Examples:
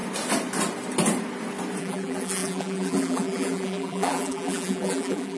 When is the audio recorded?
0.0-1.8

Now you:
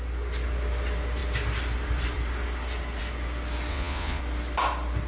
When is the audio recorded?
0.0-3.7; 4.2-5.1

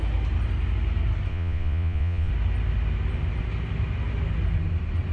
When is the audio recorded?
0.0-1.3; 2.3-5.1

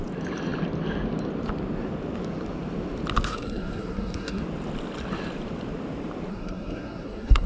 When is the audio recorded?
0.0-3.3; 4.4-6.3

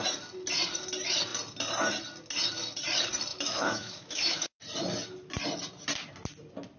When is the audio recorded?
0.0-3.3; 4.6-6.8

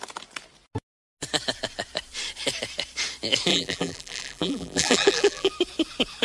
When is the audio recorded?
0.0-3.5; 5.5-6.2

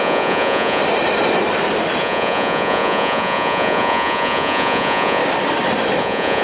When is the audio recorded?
0.8-2.0; 5.2-6.0